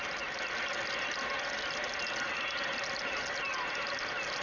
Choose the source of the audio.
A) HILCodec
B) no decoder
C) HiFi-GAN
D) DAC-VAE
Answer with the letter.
B